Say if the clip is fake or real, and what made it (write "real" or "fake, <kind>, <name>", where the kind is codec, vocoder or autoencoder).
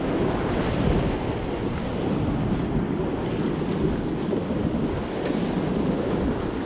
real